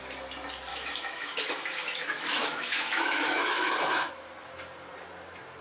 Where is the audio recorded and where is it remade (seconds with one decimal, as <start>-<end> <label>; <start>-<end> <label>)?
0.0-0.7 recorded; 0.7-4.1 remade; 4.1-5.6 recorded